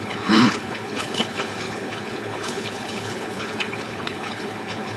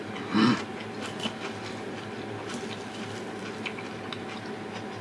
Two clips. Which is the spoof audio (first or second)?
first